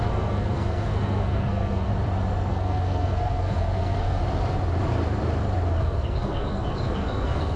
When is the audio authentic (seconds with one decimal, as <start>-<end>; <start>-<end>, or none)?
1.9-2.5; 4.2-5.8